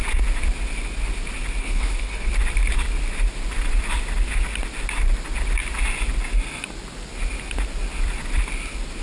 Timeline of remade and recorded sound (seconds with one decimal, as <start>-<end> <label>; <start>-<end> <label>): 0.0-1.6 recorded; 1.6-2.3 remade; 2.3-9.0 recorded